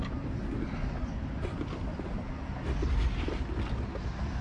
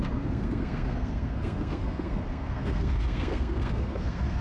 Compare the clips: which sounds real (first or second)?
first